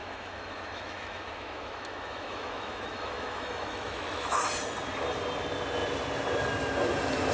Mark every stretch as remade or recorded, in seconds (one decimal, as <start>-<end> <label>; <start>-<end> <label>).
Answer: 0.0-4.4 remade; 4.4-7.3 recorded